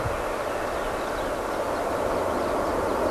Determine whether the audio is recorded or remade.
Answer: recorded